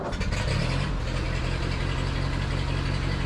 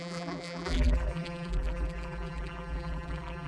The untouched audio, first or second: first